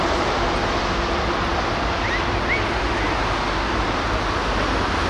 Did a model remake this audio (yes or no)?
no